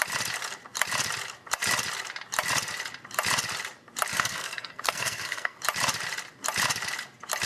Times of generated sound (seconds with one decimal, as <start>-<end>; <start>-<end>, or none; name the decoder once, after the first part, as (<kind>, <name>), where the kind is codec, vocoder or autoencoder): 4.1-5.6 (codec, SNAC)